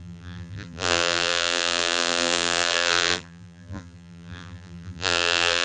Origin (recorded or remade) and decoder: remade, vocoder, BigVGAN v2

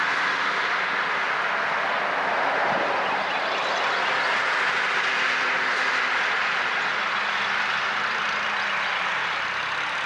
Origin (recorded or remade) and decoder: recorded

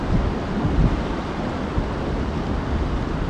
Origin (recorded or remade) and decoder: recorded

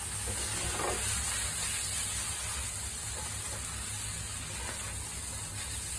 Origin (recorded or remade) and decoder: recorded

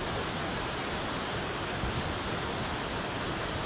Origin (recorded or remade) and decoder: recorded